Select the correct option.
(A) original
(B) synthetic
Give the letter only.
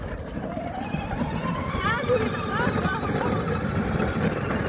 A